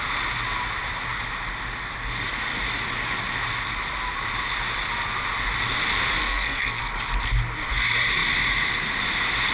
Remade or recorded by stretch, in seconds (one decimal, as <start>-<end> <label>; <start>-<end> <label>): 0.0-6.2 recorded; 6.2-6.8 remade; 6.8-9.5 recorded